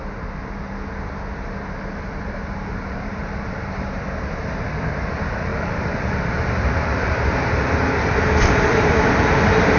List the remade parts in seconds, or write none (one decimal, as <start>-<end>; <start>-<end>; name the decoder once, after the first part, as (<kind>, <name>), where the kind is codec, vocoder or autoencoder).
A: 0.0-0.4 (vocoder, BigVGAN v2); 2.0-9.8